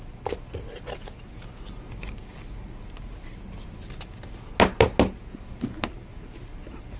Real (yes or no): yes